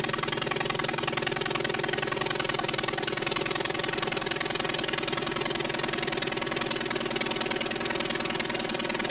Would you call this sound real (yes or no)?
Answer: yes